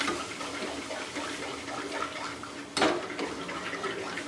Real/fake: real